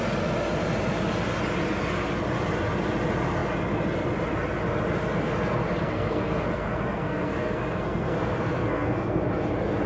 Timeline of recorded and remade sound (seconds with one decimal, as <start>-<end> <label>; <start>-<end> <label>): 0.0-5.8 recorded; 5.8-9.2 remade; 9.2-9.9 recorded